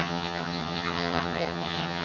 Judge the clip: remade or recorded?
remade